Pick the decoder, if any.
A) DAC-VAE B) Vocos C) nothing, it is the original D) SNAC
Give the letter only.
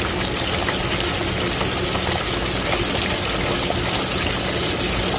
C